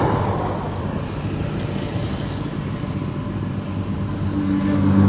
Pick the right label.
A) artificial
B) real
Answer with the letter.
B